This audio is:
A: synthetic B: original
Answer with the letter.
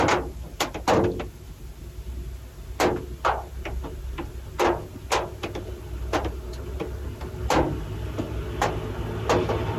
B